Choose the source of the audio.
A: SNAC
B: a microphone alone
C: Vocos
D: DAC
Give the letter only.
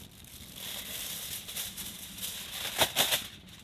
B